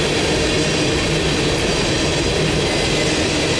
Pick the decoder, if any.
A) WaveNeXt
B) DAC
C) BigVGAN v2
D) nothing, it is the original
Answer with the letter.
D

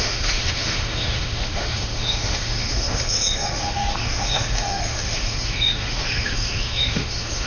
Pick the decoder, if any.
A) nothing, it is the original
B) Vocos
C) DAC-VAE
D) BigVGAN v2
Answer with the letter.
C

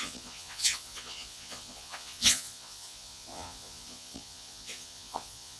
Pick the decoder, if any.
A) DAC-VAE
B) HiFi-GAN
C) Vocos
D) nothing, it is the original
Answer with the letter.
C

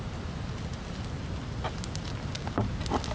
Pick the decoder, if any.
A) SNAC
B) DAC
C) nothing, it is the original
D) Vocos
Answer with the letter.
C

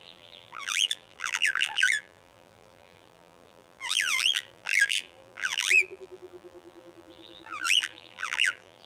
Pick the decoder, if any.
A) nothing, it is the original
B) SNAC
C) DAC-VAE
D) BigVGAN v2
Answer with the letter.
D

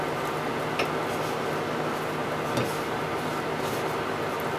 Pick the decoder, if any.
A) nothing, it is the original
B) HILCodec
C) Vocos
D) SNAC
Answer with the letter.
A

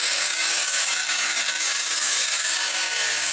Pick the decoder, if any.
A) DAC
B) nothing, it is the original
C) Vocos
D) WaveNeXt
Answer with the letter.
A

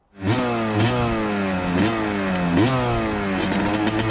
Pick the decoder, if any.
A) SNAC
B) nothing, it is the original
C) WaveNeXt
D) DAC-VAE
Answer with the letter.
B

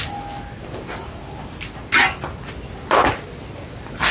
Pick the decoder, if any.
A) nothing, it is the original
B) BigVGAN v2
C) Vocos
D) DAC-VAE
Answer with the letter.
A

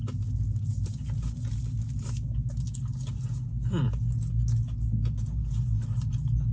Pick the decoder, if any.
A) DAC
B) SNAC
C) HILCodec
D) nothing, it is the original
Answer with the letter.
D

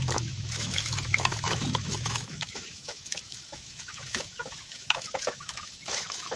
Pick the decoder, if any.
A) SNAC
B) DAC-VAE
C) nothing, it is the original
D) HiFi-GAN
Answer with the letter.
B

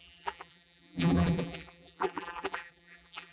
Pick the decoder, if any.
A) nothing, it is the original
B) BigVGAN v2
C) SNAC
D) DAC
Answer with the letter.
B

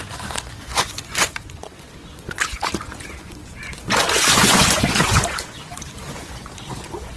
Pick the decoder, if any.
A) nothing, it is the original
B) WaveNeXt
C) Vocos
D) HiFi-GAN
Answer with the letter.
C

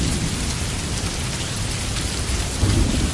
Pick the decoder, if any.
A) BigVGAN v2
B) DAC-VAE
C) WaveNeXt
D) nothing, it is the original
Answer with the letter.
A